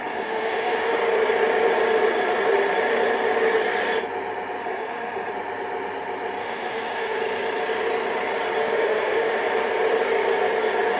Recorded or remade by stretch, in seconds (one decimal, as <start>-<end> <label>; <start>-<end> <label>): 0.0-1.0 remade; 1.0-4.6 recorded; 4.6-5.3 remade; 5.3-6.4 recorded; 6.4-7.2 remade; 7.2-8.6 recorded; 8.6-9.4 remade; 9.4-11.0 recorded